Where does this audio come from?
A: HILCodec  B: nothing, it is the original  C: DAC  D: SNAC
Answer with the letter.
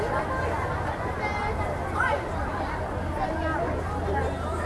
B